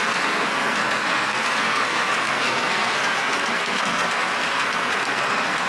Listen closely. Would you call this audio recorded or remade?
remade